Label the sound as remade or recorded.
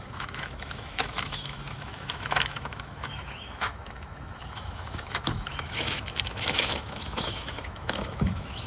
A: remade